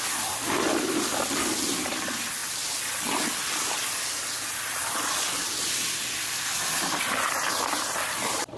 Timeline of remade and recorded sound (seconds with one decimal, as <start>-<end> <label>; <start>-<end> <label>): 0.0-2.4 remade; 2.4-4.9 recorded; 4.9-8.6 remade